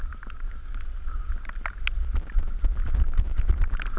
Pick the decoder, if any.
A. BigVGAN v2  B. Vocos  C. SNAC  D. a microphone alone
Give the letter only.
D